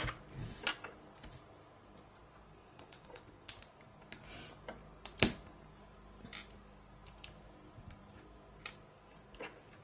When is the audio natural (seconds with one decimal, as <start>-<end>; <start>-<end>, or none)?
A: 0.0-2.6; 3.3-9.8